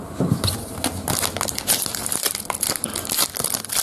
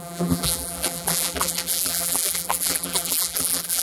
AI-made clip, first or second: second